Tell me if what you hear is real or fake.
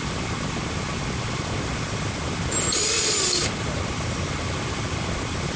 real